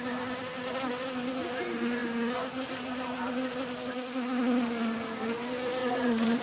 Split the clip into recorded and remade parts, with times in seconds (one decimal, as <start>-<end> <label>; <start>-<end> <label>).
0.0-5.8 recorded; 5.8-6.4 remade